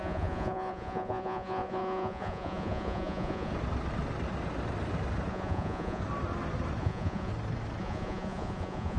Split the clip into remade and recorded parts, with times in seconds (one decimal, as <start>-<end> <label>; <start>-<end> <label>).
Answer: 0.0-3.5 remade; 3.5-5.3 recorded; 5.3-6.0 remade; 6.0-6.8 recorded; 6.8-7.3 remade; 7.3-7.8 recorded; 7.8-9.0 remade